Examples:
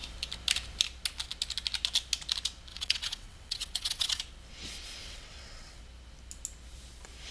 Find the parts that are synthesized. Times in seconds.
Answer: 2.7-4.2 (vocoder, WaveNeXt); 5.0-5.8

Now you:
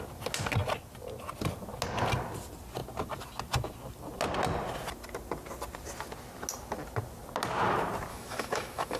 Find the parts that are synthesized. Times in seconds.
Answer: 8.1-9.0 (autoencoder, DAC-VAE)

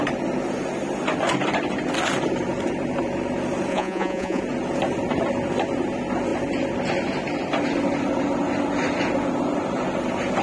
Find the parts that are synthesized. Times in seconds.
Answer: 3.7-4.4 (vocoder, Vocos)

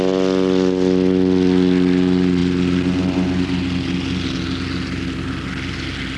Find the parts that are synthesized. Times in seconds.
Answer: none

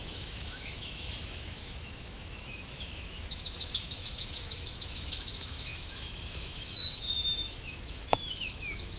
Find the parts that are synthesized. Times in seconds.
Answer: 0.0-9.0 (autoencoder, DAC-VAE)

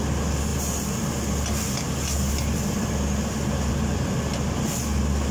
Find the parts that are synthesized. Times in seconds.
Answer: none

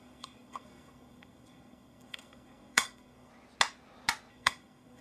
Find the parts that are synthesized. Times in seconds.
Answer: 0.0-3.3 (codec, SNAC); 4.3-5.0

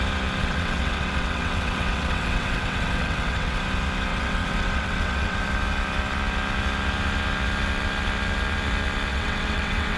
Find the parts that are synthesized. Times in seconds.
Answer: 0.4-3.6 (vocoder, WaveNeXt); 4.1-5.4; 9.1-10.0